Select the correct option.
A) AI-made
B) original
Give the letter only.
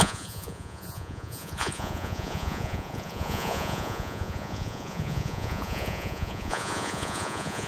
A